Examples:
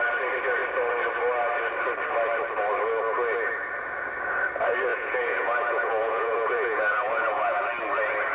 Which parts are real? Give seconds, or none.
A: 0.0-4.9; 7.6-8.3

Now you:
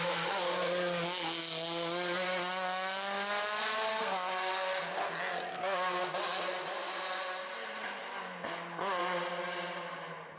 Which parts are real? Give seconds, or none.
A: 0.0-3.9; 4.5-5.5; 6.0-10.4

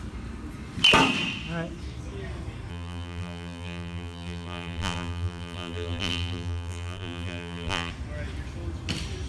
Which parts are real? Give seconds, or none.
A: 0.0-2.7; 7.9-9.3

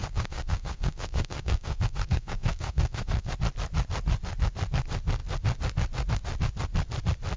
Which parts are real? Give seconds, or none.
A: 3.3-7.4

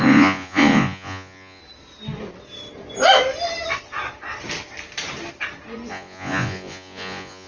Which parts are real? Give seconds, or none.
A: 1.6-5.9